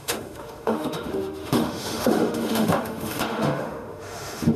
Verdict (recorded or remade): remade